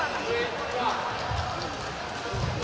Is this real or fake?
real